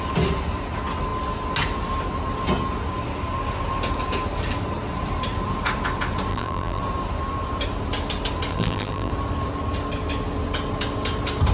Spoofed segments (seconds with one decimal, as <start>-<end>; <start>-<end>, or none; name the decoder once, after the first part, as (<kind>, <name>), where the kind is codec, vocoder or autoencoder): 6.3-6.8 (vocoder, BigVGAN v2); 8.5-9.1